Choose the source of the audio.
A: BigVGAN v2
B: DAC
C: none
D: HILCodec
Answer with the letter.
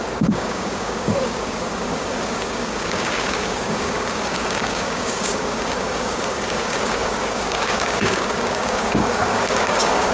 B